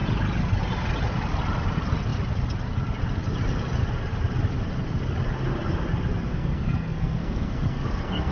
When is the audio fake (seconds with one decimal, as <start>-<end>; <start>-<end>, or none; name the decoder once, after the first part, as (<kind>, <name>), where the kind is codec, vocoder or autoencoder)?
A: 6.3-8.3 (codec, SNAC)